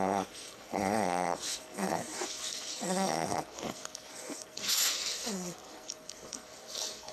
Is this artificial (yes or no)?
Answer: yes